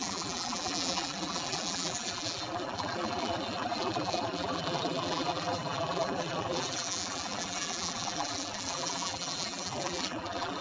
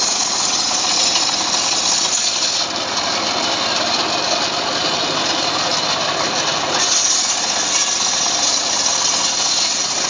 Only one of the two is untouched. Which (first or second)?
second